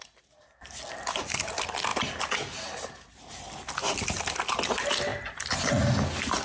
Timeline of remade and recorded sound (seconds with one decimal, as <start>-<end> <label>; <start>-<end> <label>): 0.0-6.4 recorded